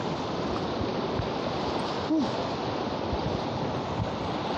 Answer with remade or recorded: recorded